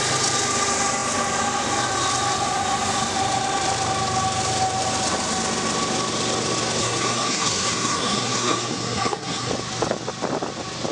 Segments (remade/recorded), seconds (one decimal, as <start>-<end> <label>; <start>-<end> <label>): 0.0-6.8 recorded; 6.8-9.5 remade; 9.5-10.9 recorded